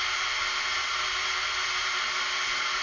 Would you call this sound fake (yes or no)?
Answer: no